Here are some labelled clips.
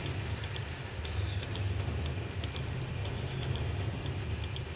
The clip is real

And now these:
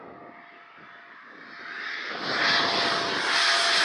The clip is real